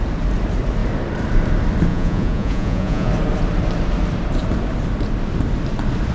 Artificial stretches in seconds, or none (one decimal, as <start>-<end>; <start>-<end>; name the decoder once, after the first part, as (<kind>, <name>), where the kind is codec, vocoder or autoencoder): 1.9-3.1 (vocoder, Vocos)